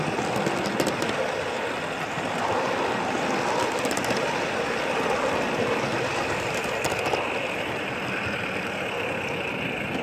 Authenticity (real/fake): real